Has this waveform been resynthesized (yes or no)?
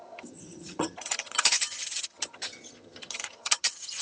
yes